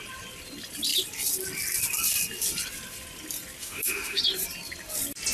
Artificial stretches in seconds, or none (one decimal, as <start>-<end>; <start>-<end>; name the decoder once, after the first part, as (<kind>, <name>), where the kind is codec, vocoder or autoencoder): 3.6-4.2 (autoencoder, DAC-VAE)